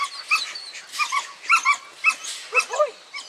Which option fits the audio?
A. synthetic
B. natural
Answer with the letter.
B